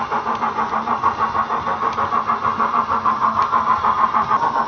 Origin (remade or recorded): recorded